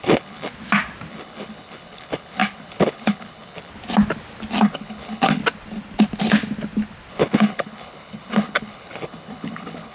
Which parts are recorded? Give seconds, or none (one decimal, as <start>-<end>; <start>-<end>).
0.5-1.1; 3.7-4.6; 5.4-7.1